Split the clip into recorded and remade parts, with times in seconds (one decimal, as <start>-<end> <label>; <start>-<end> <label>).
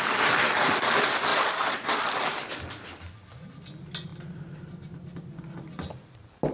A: 0.0-1.3 recorded; 1.3-2.0 remade; 2.0-6.5 recorded